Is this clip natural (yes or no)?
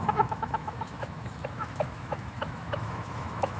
no